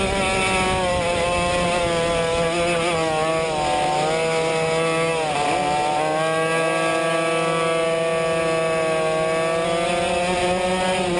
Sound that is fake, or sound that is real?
real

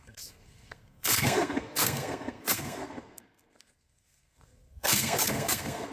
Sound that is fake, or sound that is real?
fake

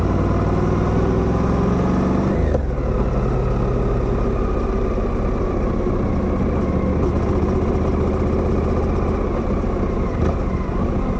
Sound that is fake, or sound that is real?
real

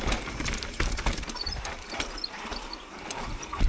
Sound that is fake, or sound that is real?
real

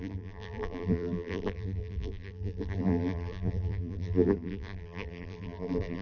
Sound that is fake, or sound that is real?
fake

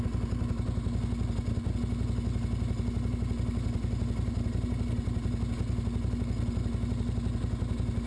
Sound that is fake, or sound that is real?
real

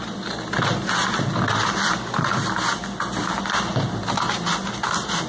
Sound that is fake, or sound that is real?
real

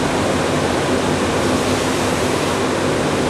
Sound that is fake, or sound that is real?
real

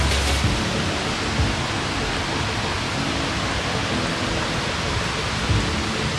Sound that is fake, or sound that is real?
real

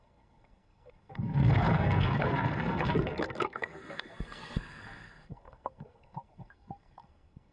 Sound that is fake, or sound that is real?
fake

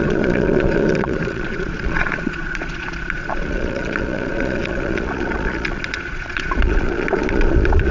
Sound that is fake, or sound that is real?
fake